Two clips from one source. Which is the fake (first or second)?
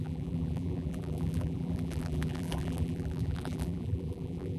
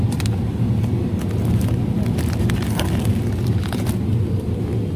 first